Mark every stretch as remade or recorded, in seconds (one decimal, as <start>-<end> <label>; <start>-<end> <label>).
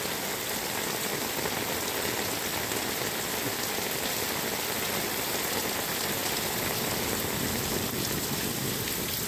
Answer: 0.0-9.3 recorded